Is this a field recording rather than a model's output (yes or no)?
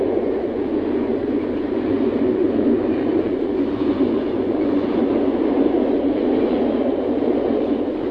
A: no